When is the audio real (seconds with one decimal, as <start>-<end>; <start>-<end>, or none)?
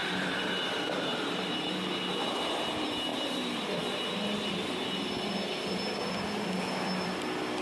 1.7-3.1; 3.8-7.6